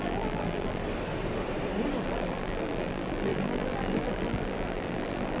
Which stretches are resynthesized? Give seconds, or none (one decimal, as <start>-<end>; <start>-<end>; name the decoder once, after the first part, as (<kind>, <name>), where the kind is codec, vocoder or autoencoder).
0.0-0.8 (vocoder, BigVGAN v2); 2.0-5.4